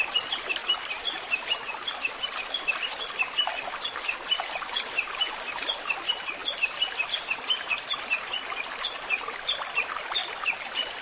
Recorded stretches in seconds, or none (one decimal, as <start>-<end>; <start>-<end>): 0.0-0.6; 2.3-10.2

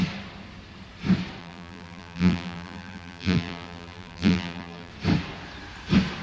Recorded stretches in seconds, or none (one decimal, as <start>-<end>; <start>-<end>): 0.0-1.4; 4.9-6.2

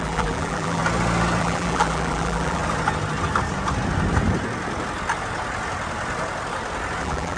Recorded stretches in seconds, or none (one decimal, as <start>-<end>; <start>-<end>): 0.8-1.4; 2.6-7.0

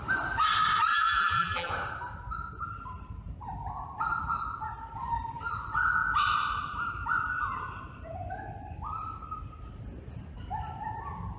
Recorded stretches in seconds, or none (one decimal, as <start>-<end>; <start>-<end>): 0.0-0.9; 1.7-11.4

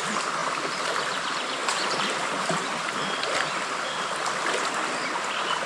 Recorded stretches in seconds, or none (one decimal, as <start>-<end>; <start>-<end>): 0.0-0.4; 0.9-1.6; 4.3-5.7

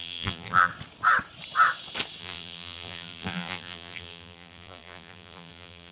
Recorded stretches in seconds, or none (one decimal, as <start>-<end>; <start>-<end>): 0.7-2.2

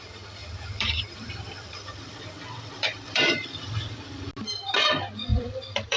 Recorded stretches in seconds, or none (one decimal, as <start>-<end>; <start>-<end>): 0.0-0.4; 4.0-5.3